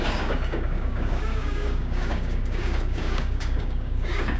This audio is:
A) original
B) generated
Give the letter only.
B